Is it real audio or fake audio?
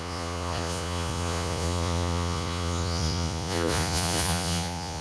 fake